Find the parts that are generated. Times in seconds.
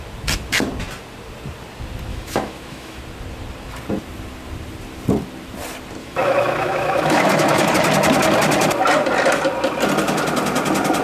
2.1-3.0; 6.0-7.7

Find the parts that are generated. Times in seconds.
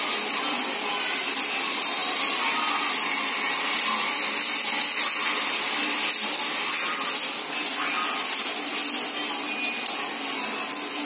none